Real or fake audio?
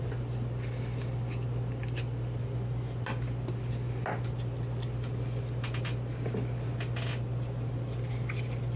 real